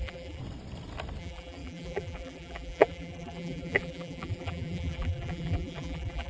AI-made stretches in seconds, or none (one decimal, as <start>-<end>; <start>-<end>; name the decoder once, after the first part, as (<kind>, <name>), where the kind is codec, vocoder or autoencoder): 0.0-0.4 (vocoder, BigVGAN v2); 1.2-6.3